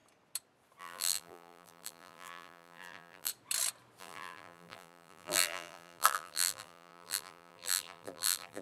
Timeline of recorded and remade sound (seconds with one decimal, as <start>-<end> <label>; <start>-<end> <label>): 0.0-0.8 recorded; 0.8-3.3 remade; 3.3-4.0 recorded; 4.0-8.6 remade